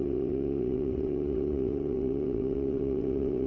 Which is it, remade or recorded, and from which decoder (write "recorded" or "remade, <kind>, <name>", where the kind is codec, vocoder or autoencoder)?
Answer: remade, vocoder, WaveNeXt